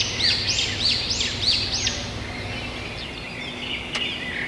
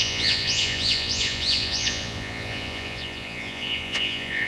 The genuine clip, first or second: first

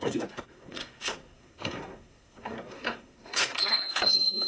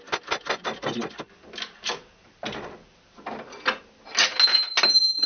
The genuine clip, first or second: second